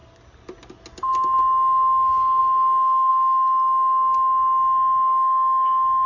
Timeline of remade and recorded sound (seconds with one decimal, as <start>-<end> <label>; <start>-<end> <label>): 0.0-6.1 recorded